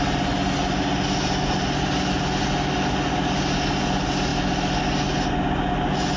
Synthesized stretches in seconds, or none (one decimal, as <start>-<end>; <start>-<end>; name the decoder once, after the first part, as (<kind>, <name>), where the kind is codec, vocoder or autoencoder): none